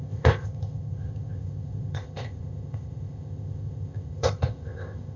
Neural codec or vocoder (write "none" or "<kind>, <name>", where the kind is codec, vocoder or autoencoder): codec, ZipCodec